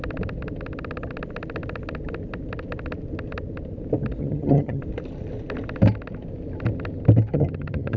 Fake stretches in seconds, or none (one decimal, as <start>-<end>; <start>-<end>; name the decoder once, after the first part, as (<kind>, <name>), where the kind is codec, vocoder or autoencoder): 4.2-4.8 (vocoder, HiFi-GAN); 7.3-8.0